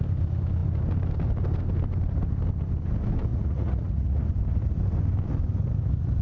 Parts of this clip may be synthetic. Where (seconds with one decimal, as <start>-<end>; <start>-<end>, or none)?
3.3-4.2